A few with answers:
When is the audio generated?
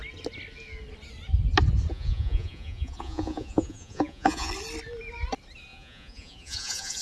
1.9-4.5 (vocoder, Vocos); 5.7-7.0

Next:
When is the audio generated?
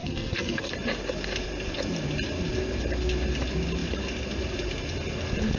0.0-0.7 (codec, SNAC)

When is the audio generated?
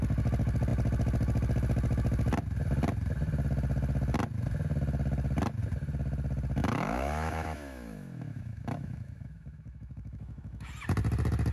6.6-10.7 (autoencoder, DAC-VAE)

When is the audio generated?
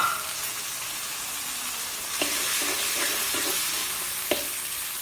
none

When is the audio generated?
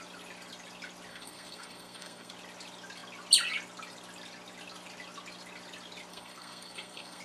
1.1-2.3 (codec, SNAC); 6.1-7.2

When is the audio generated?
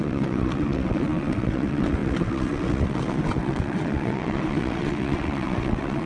0.0-6.1 (vocoder, WaveNeXt)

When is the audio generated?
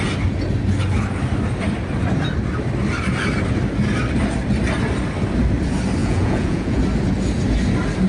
6.0-6.8 (vocoder, Vocos)